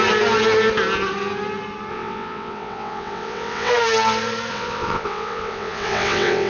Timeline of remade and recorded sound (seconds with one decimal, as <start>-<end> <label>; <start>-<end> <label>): 0.0-1.9 recorded; 1.9-3.7 remade; 3.7-4.5 recorded; 4.5-6.5 remade